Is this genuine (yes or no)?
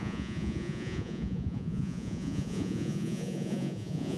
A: no